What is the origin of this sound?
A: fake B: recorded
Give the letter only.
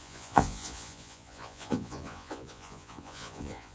A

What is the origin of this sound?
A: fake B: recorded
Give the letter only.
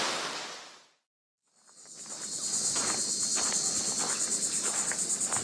B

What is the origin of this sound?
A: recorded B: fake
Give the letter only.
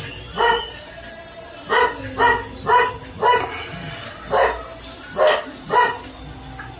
A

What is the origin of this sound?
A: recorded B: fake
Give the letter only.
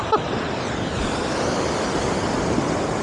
A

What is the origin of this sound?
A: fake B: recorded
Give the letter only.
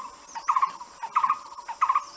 B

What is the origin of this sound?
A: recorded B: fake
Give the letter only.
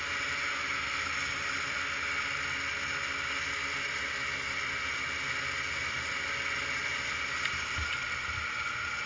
A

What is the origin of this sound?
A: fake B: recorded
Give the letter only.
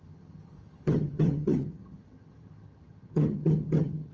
A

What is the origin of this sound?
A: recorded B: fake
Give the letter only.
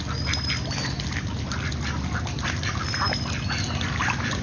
A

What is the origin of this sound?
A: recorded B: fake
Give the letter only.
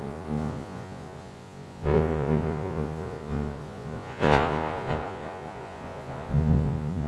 B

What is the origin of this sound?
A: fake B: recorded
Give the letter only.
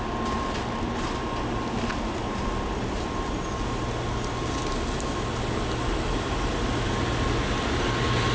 B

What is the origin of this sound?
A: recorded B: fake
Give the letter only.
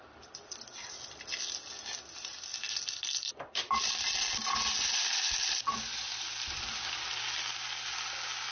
A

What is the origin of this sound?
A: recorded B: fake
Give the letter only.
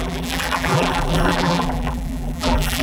B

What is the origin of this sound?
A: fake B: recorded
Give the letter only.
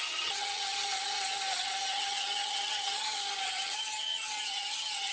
A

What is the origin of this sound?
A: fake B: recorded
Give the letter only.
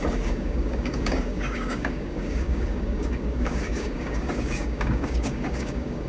A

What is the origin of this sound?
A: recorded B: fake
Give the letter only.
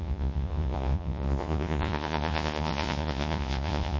B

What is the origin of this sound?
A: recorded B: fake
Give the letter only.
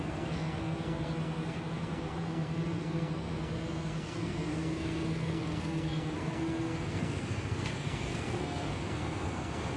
B